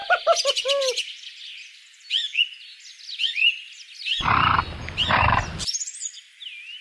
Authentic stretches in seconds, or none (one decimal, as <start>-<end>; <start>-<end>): 0.0-6.8

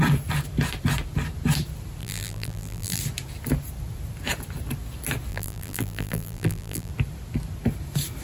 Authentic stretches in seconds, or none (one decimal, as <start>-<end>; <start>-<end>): 0.0-2.0; 3.0-5.3; 6.9-8.2